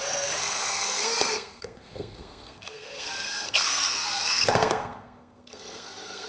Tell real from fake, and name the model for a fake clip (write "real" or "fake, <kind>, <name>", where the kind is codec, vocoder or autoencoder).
fake, codec, SNAC